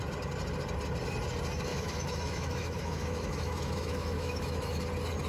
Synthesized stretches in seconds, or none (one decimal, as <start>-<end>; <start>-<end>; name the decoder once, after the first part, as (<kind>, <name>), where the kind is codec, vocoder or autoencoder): 1.7-4.8 (autoencoder, DAC-VAE)